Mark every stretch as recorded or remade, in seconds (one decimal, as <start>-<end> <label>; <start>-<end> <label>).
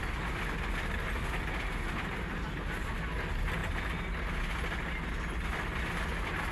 0.0-6.5 recorded